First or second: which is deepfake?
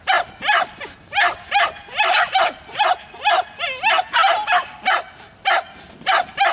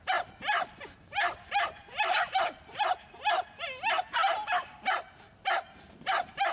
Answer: second